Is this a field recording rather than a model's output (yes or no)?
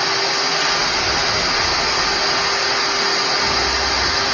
yes